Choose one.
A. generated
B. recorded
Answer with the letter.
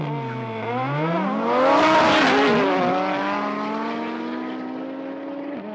B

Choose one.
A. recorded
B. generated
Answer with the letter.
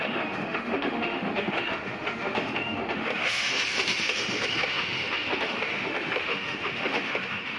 B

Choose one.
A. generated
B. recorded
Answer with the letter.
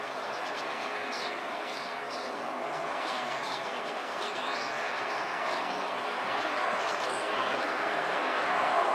A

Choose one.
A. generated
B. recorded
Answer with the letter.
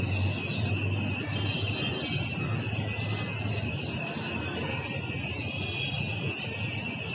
B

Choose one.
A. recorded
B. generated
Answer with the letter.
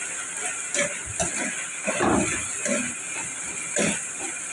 A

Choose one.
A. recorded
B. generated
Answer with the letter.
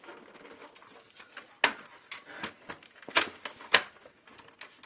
A